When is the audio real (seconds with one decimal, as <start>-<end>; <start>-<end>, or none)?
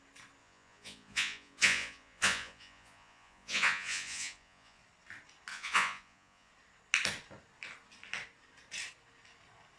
0.0-0.4; 4.8-5.5; 6.5-9.8